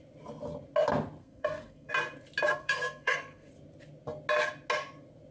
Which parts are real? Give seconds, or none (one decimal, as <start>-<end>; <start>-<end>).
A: 0.0-1.2; 1.9-2.6; 3.5-5.3